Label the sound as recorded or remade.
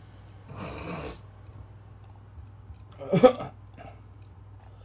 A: recorded